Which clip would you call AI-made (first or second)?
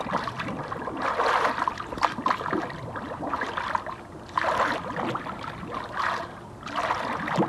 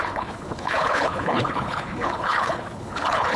second